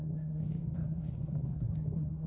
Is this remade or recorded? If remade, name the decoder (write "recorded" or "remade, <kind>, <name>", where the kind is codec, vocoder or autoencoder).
remade, codec, SNAC